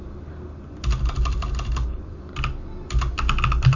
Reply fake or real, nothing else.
real